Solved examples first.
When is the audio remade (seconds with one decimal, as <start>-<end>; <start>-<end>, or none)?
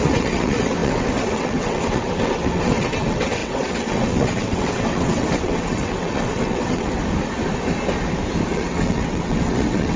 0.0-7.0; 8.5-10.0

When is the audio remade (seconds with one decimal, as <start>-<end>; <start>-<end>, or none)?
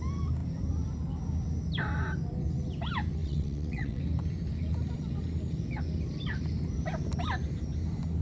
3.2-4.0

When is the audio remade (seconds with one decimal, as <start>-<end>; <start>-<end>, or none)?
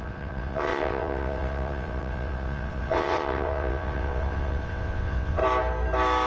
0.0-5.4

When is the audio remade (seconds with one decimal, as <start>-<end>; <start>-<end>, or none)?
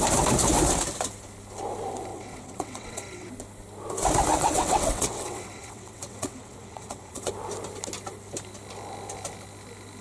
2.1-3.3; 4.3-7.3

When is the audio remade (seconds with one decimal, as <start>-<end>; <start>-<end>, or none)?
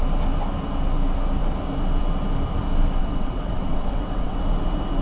3.0-4.4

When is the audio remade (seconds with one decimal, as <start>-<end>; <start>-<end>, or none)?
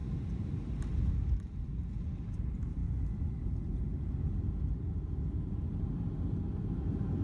none